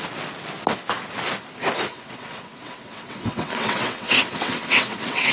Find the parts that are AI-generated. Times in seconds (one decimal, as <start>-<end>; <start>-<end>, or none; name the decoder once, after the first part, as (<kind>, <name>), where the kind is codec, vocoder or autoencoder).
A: 1.9-5.3 (vocoder, WaveNeXt)